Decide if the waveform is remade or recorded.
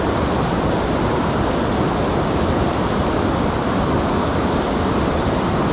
recorded